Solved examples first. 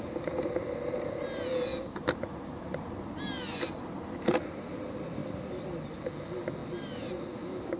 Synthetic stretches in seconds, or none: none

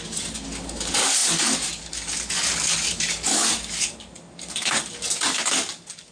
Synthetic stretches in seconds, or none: 0.0-6.1 (codec, DAC)

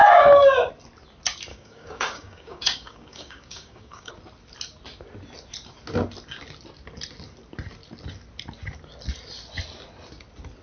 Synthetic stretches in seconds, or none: 0.0-0.7 (codec, DAC); 1.5-4.1

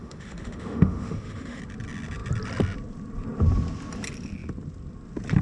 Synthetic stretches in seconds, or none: 0.0-1.6 (autoencoder, DAC-VAE)

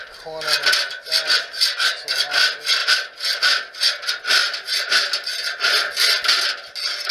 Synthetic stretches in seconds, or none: none

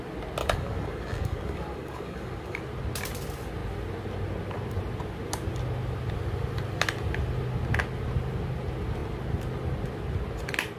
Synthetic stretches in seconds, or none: 0.4-2.6 (codec, DAC)